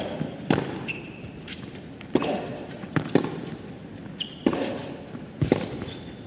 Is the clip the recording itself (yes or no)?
yes